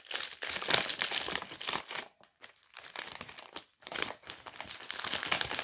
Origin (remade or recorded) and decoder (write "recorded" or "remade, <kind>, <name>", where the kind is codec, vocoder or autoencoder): recorded